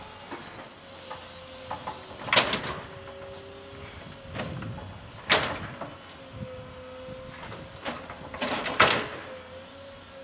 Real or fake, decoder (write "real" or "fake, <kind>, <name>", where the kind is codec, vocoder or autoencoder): real